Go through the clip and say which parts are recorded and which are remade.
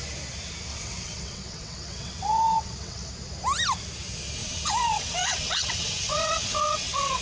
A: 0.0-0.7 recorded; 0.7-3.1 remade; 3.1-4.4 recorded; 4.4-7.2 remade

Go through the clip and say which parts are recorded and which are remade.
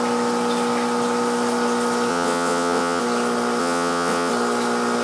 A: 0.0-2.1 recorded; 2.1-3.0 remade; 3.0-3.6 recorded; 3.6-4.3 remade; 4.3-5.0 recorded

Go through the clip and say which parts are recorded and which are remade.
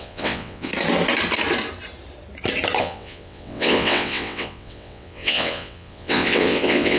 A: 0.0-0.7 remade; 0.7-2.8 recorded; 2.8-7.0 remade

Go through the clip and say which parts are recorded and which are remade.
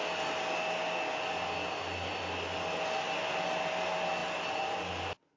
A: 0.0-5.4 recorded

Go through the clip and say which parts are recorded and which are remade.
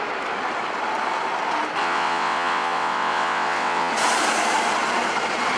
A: 0.0-1.8 recorded; 1.8-3.9 remade; 3.9-5.6 recorded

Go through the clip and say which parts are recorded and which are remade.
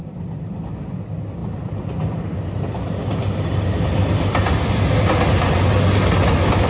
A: 0.0-6.7 recorded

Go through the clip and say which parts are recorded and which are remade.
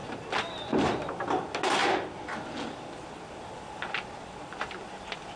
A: 0.0-5.4 recorded